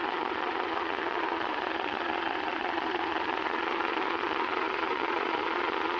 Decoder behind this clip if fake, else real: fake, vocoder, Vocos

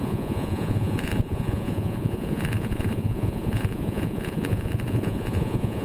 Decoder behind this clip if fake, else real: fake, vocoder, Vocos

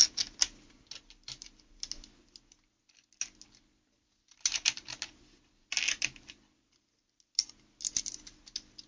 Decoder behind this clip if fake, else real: real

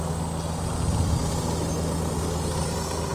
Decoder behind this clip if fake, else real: real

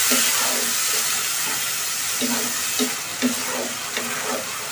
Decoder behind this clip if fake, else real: real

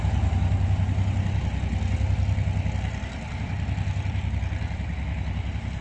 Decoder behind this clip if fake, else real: real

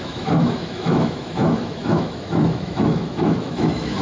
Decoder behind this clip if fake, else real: fake, autoencoder, DAC-VAE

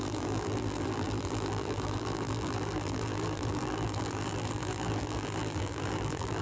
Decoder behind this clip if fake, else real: fake, vocoder, BigVGAN v2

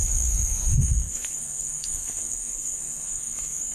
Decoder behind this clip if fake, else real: fake, codec, SNAC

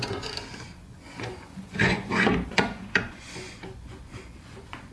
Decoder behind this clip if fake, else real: fake, vocoder, Vocos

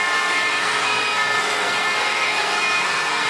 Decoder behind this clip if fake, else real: fake, codec, SNAC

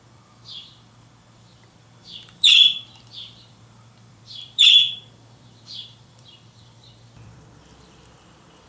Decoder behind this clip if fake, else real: fake, vocoder, BigVGAN v2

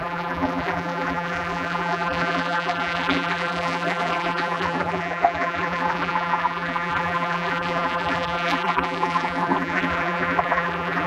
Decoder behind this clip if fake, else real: fake, vocoder, BigVGAN v2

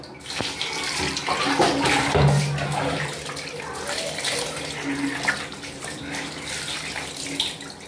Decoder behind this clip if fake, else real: real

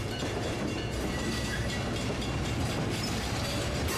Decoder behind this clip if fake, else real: fake, vocoder, BigVGAN v2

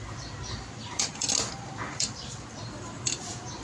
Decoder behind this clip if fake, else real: fake, vocoder, BigVGAN v2